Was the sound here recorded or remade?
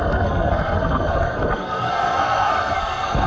remade